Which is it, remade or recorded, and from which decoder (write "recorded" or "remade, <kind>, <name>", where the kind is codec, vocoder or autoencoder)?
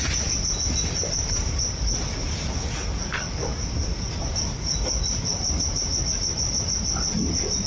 recorded